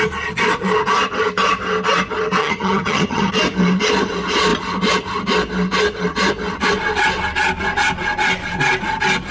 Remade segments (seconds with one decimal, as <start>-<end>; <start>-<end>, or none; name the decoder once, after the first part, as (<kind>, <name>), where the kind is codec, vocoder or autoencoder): 2.4-3.3 (vocoder, HiFi-GAN)